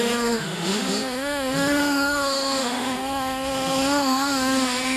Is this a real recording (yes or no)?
no